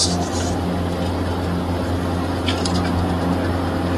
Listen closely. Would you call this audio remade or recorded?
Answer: recorded